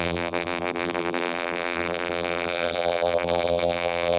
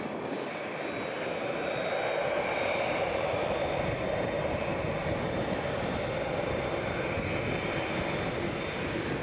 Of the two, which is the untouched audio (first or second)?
second